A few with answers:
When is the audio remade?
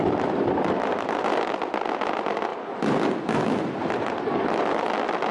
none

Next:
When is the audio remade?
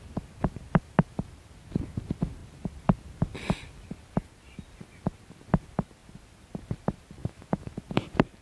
7.2-7.7 (autoencoder, DAC-VAE)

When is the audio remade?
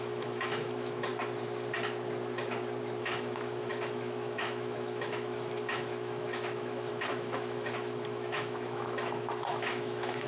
0.0-1.1 (autoencoder, DAC-VAE); 3.0-10.3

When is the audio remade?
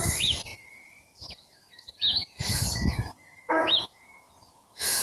0.0-5.0 (autoencoder, DAC-VAE)